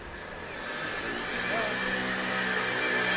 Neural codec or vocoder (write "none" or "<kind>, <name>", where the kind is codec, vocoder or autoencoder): none